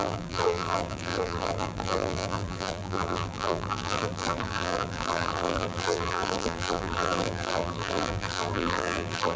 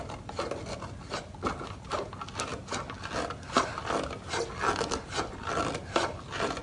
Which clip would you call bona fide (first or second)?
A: second